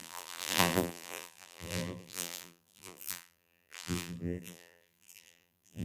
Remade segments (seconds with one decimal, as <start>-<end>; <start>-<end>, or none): 0.0-5.8